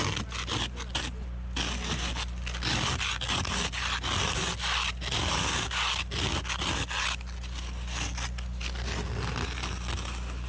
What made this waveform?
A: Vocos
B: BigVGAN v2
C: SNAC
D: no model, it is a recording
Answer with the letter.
D